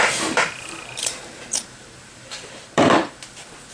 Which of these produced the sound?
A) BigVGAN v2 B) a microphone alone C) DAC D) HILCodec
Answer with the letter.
A